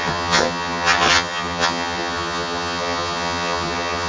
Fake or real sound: fake